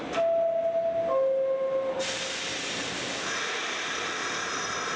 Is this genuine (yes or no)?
yes